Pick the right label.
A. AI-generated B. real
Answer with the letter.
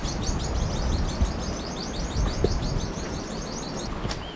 B